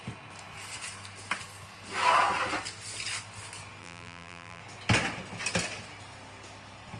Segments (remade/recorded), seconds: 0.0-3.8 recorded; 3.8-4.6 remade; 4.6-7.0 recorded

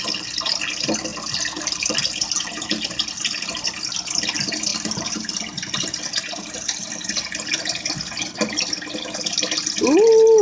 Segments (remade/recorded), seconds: 0.0-1.1 recorded; 1.1-3.8 remade; 3.8-4.7 recorded; 4.7-6.0 remade; 6.0-10.4 recorded

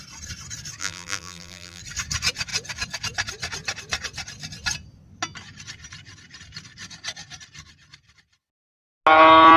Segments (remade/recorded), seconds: 0.0-0.8 recorded; 0.8-1.8 remade; 1.8-9.6 recorded

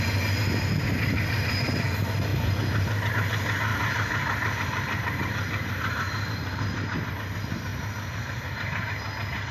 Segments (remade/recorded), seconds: 0.0-2.3 recorded; 2.3-3.1 remade; 3.1-3.7 recorded; 3.7-7.1 remade; 7.1-7.7 recorded; 7.7-8.9 remade; 8.9-9.5 recorded

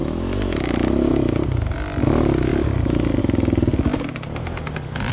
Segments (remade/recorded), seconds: 0.0-5.1 recorded